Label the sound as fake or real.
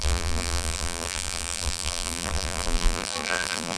fake